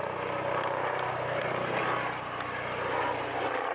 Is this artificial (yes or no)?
no